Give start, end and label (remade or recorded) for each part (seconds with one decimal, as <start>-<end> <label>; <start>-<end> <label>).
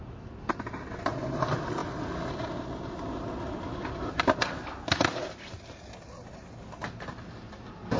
0.0-8.0 recorded